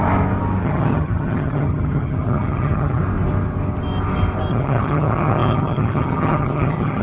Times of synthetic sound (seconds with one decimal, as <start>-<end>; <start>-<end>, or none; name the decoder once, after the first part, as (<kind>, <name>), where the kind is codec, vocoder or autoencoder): 0.6-3.0 (vocoder, HiFi-GAN); 4.5-7.0